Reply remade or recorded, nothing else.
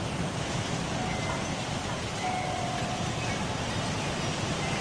recorded